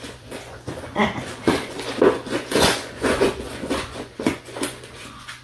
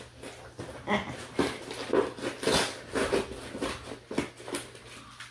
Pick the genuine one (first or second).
second